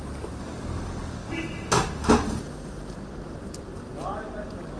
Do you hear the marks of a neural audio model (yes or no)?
no